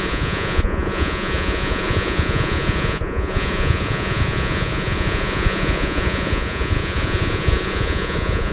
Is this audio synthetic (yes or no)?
yes